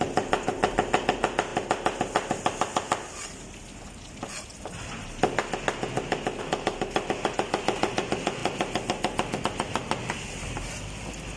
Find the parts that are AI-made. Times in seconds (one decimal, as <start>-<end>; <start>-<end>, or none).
none